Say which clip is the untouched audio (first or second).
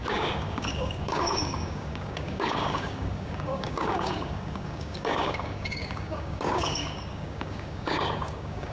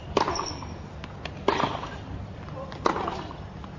second